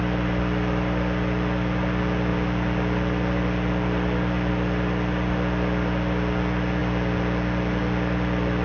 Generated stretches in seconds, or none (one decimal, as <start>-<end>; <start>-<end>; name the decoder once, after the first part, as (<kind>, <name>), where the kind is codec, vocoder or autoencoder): none